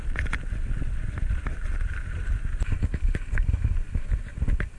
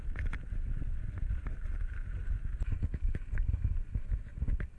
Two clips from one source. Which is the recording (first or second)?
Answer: second